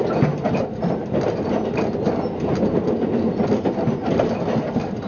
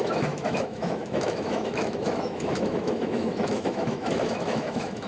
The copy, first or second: second